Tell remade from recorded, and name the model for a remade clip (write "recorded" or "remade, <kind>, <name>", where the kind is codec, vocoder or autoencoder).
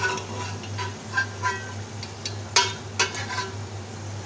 recorded